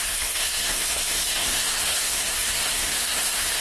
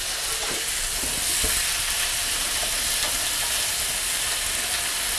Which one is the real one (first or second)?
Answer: second